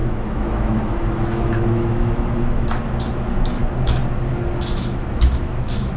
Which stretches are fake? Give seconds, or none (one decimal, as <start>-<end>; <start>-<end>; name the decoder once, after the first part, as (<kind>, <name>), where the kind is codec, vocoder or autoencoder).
0.0-3.6 (autoencoder, DAC-VAE); 4.7-6.0